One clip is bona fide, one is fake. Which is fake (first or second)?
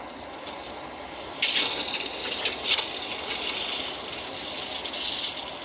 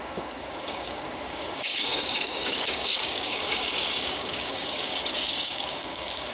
second